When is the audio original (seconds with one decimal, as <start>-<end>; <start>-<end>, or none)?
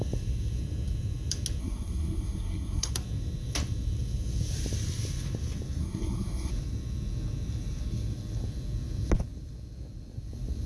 0.0-1.6; 2.9-5.8; 6.5-10.7